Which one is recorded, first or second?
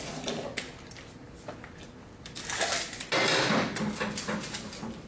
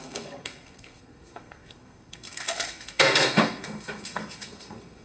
first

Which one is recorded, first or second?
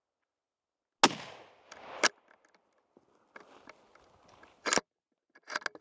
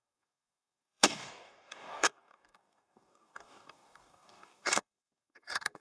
first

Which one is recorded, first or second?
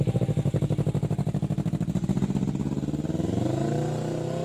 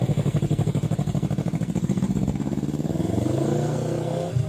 first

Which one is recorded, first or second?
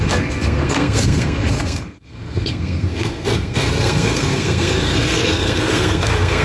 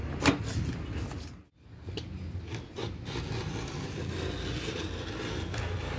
second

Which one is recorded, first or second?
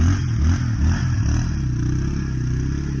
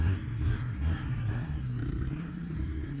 first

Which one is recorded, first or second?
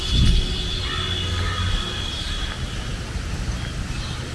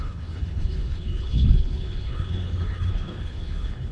first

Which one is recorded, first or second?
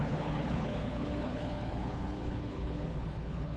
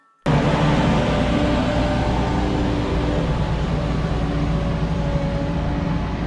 second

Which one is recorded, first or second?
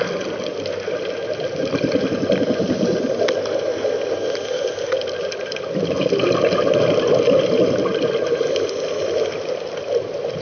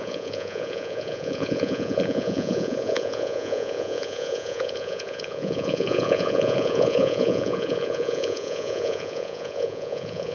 first